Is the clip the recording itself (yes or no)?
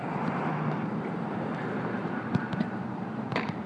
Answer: no